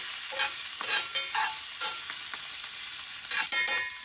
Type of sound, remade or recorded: recorded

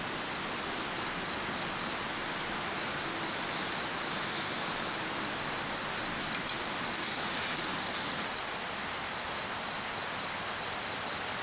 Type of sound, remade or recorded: recorded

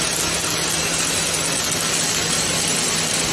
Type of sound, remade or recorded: recorded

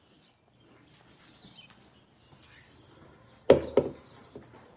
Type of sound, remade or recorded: recorded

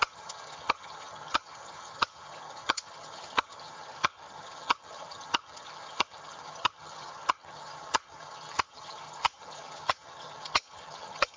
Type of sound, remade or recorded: remade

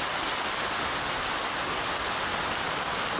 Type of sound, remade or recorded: recorded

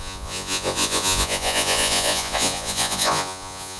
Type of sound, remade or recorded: remade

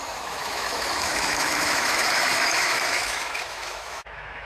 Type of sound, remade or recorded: remade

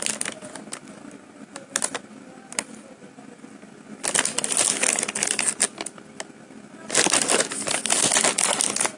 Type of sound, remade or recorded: recorded